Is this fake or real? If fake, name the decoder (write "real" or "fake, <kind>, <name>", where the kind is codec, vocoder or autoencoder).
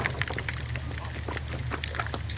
real